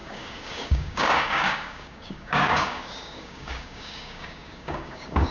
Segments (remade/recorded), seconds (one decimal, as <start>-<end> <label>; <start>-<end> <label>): 0.0-5.3 remade